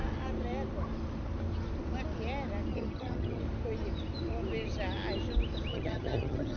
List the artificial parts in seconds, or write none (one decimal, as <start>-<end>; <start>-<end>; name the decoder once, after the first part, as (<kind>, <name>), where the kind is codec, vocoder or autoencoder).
2.7-3.4 (vocoder, HiFi-GAN); 5.7-6.6